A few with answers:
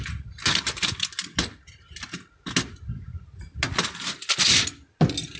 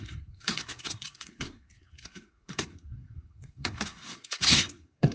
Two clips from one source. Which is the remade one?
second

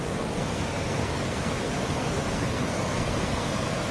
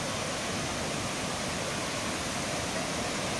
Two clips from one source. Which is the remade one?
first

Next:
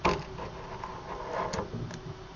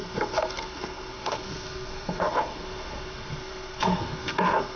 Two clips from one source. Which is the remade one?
second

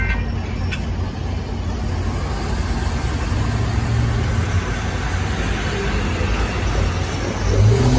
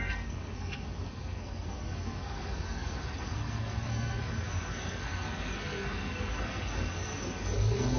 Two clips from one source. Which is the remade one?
second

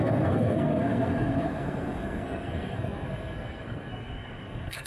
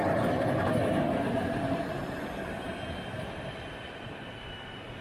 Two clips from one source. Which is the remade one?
first